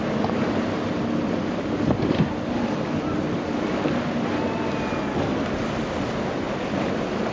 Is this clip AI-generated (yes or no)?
no